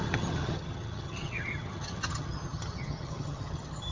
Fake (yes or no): yes